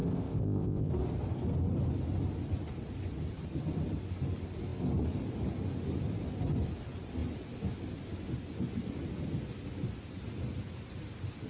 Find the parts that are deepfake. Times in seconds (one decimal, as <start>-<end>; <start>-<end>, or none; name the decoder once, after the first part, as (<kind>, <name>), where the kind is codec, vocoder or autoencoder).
0.0-0.9 (codec, ZipCodec)